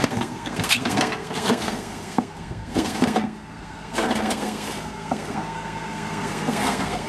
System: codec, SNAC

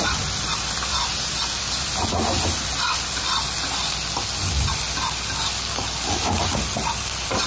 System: none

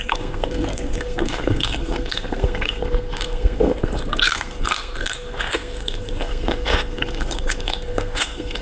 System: codec, SNAC